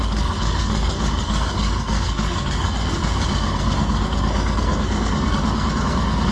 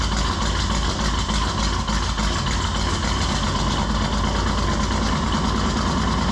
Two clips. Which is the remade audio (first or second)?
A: first